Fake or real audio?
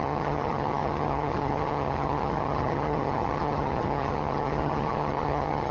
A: fake